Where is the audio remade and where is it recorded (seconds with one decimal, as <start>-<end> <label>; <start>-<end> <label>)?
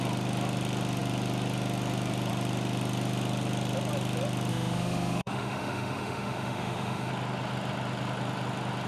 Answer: 0.0-4.5 recorded; 4.5-7.1 remade; 7.1-8.9 recorded